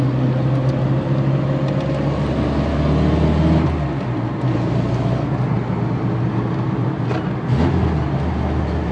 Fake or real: real